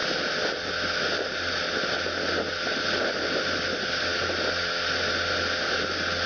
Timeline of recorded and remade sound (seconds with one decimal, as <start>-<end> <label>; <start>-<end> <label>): 0.0-6.3 recorded